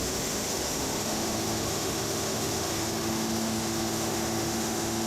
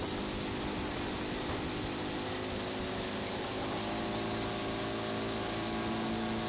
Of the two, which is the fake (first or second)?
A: first